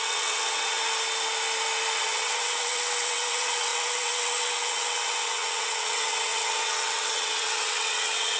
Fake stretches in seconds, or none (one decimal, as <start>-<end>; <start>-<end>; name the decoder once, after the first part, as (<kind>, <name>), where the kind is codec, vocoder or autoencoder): 0.0-0.8 (vocoder, WaveNeXt); 2.0-8.4